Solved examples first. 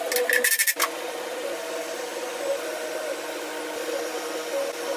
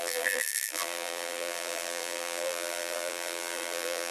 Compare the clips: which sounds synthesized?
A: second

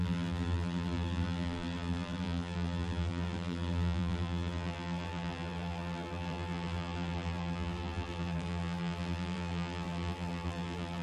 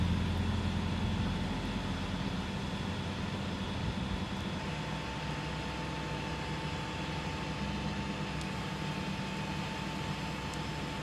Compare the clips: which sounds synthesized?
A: first